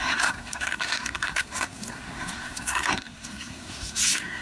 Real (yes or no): no